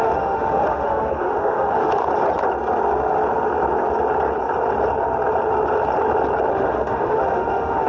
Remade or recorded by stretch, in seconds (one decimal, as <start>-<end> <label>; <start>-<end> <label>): 0.0-2.0 remade; 2.0-6.5 recorded; 6.5-7.9 remade